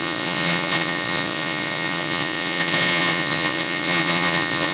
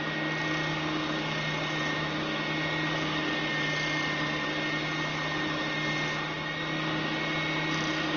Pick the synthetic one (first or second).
first